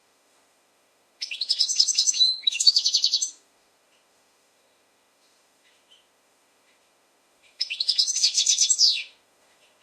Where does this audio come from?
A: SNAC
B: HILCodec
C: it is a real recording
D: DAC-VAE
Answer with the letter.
D